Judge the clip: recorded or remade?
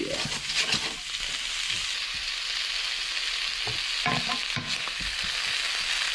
recorded